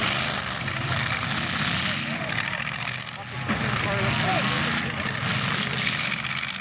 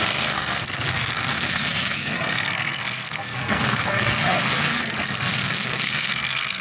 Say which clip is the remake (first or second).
second